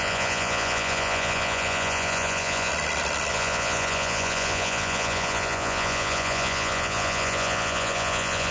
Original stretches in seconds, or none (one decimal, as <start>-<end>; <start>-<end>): 2.7-3.3